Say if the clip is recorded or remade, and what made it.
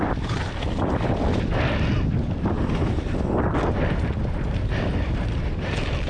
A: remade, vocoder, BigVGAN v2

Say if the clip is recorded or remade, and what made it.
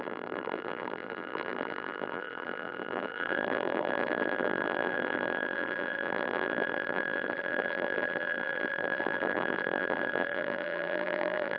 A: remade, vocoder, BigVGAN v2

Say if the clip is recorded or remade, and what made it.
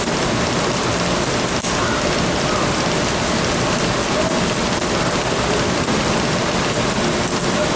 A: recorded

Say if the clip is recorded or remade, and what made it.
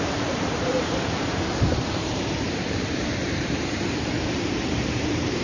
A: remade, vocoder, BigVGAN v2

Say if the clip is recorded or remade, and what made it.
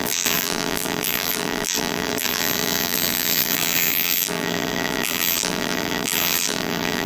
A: remade, vocoder, BigVGAN v2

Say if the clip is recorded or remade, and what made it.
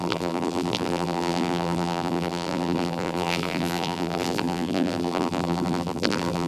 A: remade, vocoder, BigVGAN v2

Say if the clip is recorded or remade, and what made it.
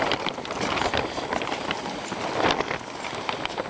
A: recorded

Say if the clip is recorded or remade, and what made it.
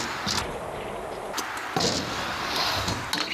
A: recorded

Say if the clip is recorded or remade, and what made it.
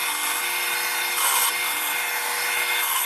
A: recorded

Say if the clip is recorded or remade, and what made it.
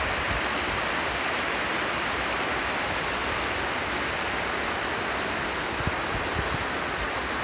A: recorded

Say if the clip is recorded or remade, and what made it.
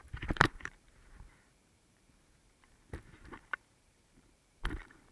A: remade, vocoder, BigVGAN v2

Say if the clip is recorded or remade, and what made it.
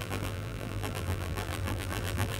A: remade, vocoder, BigVGAN v2